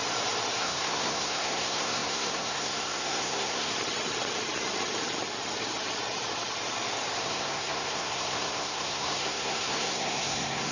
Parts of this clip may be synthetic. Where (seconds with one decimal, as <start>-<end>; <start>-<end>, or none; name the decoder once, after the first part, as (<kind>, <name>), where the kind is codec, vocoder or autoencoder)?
0.6-3.7 (codec, SNAC); 7.2-10.7